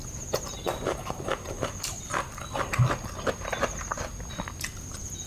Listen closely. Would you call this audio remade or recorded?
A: recorded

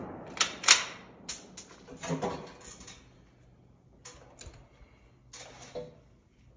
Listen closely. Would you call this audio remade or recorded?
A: recorded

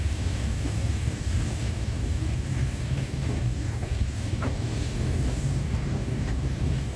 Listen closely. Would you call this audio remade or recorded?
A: remade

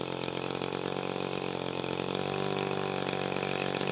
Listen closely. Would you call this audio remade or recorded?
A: recorded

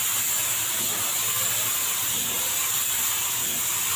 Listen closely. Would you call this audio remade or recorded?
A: recorded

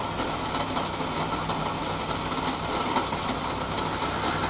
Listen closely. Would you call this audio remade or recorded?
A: recorded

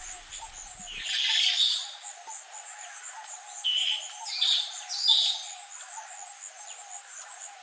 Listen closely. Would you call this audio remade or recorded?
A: recorded